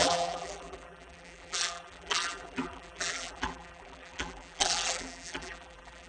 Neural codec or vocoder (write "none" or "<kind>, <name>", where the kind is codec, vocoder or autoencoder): vocoder, BigVGAN v2